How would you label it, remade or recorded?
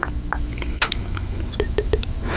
remade